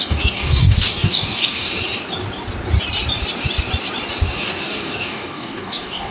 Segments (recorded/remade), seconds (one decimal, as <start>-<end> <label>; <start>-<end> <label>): 0.0-1.7 remade; 1.7-4.3 recorded; 4.3-6.1 remade